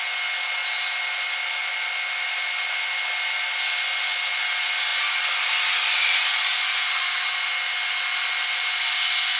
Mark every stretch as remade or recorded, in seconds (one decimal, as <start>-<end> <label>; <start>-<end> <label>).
0.0-9.4 recorded